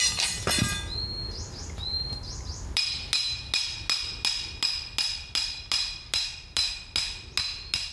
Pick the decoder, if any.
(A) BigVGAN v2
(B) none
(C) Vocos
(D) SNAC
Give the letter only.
B